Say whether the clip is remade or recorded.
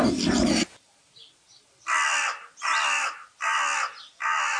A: recorded